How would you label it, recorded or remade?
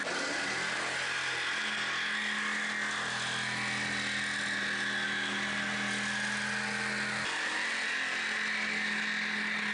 recorded